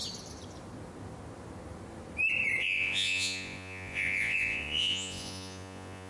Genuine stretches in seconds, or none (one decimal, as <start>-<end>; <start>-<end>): 0.0-2.6